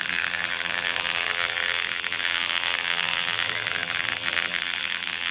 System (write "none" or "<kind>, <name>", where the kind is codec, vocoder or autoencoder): vocoder, BigVGAN v2